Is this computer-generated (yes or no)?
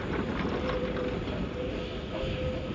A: no